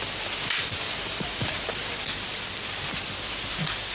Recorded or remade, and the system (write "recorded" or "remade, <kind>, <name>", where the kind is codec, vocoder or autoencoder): recorded